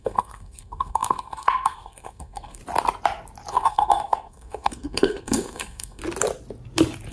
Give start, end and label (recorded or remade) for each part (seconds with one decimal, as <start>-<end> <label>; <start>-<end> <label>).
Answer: 0.0-2.6 remade; 2.6-3.5 recorded; 3.5-6.0 remade; 6.0-7.1 recorded